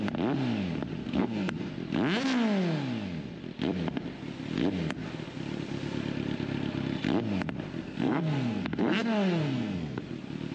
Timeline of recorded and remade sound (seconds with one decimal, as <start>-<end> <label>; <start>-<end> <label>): 0.0-1.0 recorded; 1.0-1.7 remade; 1.7-7.8 recorded; 7.8-10.0 remade; 10.0-10.5 recorded